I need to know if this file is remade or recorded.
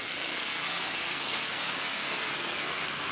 remade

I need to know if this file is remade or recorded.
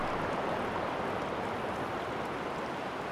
recorded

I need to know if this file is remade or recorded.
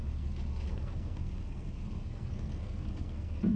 remade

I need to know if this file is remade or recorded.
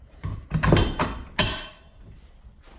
recorded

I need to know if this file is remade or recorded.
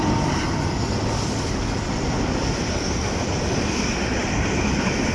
recorded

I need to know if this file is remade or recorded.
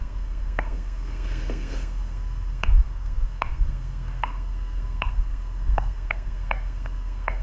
remade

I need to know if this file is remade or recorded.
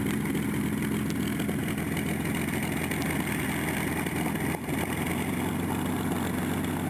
recorded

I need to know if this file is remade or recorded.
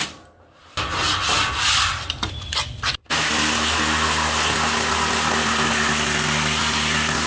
recorded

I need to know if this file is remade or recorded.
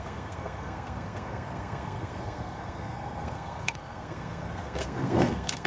remade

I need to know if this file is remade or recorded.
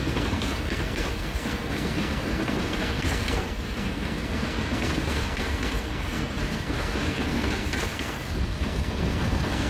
remade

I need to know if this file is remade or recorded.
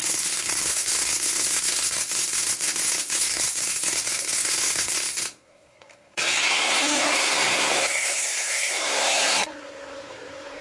remade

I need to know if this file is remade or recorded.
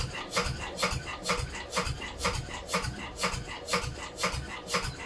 recorded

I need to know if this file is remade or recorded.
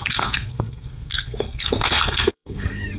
remade